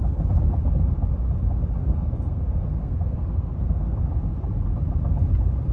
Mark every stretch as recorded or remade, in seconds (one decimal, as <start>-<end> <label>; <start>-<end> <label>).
0.0-1.8 recorded; 1.8-4.1 remade; 4.1-5.7 recorded